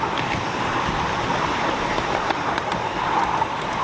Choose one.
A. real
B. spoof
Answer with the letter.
A